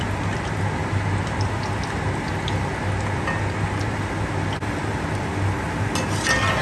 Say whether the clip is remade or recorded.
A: recorded